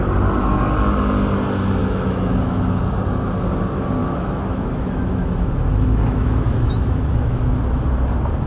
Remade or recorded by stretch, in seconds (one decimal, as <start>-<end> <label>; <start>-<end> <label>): 0.0-1.8 recorded; 1.8-2.8 remade; 2.8-4.0 recorded; 4.0-7.4 remade; 7.4-8.5 recorded